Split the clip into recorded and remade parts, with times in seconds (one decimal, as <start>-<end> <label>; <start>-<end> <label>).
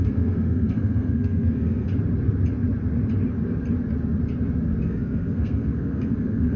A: 0.0-1.9 remade; 1.9-4.8 recorded; 4.8-6.6 remade